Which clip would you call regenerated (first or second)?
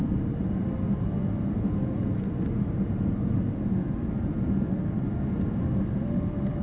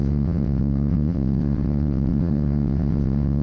second